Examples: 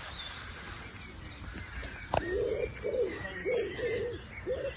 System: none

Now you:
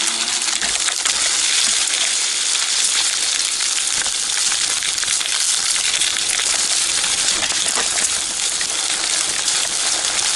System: none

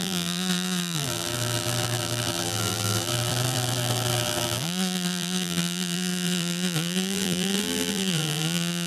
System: vocoder, BigVGAN v2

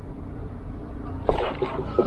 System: none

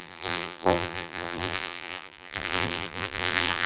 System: vocoder, BigVGAN v2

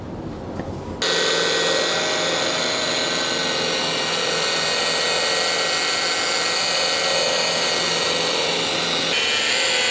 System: none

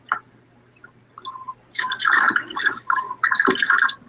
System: none